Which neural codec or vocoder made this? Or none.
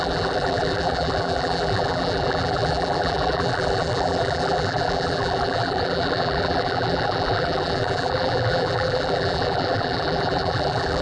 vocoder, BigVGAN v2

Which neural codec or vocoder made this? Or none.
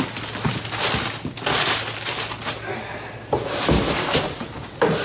none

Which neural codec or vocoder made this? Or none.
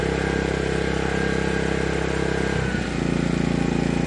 none